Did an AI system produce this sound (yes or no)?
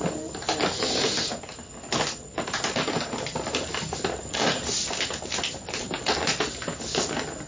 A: no